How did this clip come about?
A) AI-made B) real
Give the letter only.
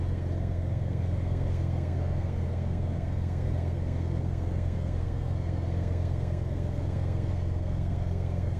A